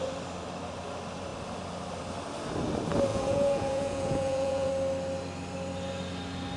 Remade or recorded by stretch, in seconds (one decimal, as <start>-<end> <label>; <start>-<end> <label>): 0.0-3.1 recorded; 3.1-4.7 remade; 4.7-6.6 recorded